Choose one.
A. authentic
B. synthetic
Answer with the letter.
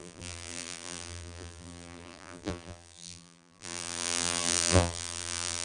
B